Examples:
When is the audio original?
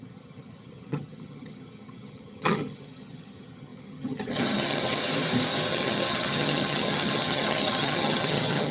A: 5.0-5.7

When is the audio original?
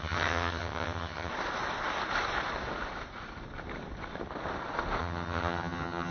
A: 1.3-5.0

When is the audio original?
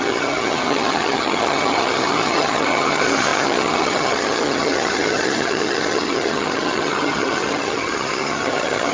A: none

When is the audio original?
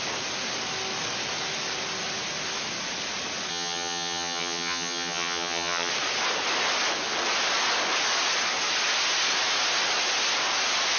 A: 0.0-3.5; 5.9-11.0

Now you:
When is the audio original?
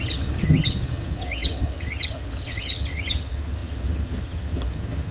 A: none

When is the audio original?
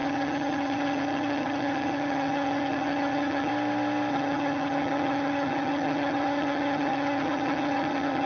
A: 3.5-4.1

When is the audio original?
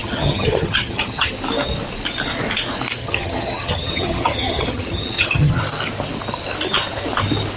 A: 1.3-3.0; 5.6-7.6